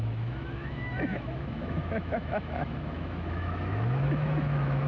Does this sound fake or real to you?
fake